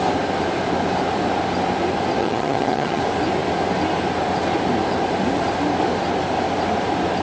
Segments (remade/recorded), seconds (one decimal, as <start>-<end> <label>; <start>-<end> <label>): 0.0-2.2 recorded; 2.2-3.0 remade; 3.0-7.2 recorded